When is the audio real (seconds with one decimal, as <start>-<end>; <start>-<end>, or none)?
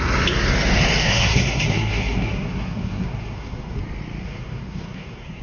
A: 0.0-1.0; 3.8-4.2